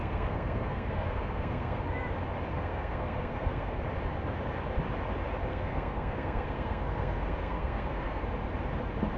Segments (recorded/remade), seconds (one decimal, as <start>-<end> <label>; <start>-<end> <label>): 0.0-1.8 remade; 1.8-2.5 recorded; 2.5-3.8 remade; 3.8-5.5 recorded; 5.5-8.2 remade; 8.2-9.2 recorded